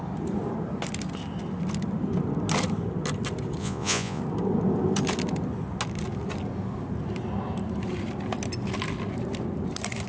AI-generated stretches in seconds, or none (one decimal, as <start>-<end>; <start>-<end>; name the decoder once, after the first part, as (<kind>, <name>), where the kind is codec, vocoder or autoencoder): 3.6-4.2 (vocoder, Vocos)